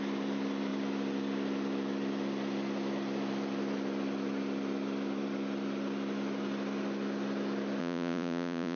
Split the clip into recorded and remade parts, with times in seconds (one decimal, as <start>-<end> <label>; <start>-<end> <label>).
0.0-7.8 recorded; 7.8-8.8 remade